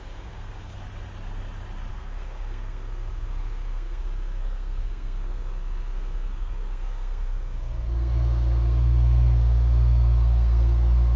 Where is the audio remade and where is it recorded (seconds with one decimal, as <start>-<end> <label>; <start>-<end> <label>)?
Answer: 0.0-0.8 remade; 0.8-1.9 recorded; 1.9-11.2 remade